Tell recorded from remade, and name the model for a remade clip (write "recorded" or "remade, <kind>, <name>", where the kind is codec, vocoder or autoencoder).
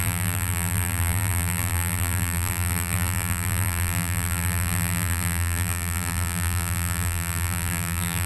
remade, vocoder, BigVGAN v2